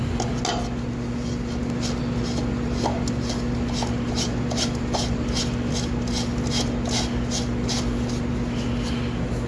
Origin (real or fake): real